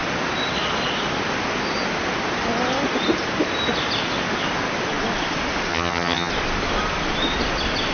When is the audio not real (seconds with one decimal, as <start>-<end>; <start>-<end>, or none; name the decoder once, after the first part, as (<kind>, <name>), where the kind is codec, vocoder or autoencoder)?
5.7-6.3 (vocoder, HiFi-GAN)